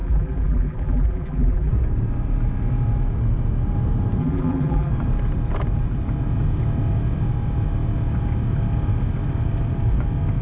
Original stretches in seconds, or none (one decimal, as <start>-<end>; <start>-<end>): 1.7-4.2; 4.9-10.4